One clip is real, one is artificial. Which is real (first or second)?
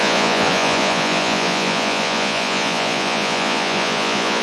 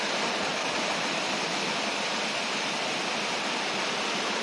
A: second